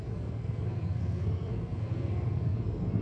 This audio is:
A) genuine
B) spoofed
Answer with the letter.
B